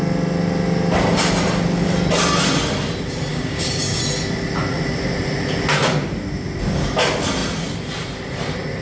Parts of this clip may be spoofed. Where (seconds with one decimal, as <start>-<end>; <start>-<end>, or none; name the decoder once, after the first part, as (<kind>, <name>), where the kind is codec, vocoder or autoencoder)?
3.3-4.0 (codec, DAC)